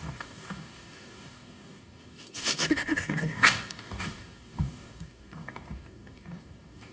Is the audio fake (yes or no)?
yes